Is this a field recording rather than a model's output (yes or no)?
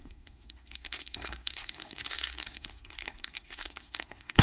no